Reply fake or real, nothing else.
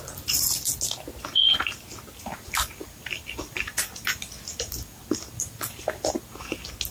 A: real